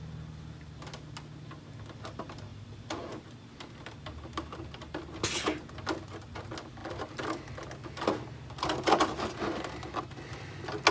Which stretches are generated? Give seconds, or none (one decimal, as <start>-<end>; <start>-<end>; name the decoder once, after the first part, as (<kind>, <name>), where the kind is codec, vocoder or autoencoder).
none